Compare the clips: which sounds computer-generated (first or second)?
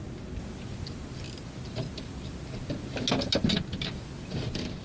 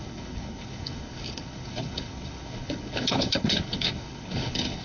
second